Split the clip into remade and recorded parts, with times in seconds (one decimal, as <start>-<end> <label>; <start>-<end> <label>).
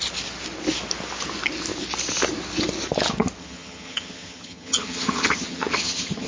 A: 0.0-3.4 recorded; 3.4-6.3 remade